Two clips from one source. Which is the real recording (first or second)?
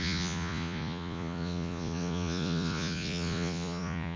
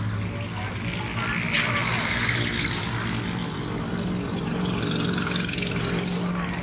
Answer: second